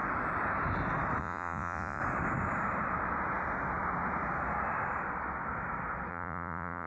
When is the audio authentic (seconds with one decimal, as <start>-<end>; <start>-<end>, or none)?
0.0-1.2; 2.0-6.1